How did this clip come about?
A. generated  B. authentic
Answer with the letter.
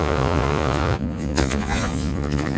A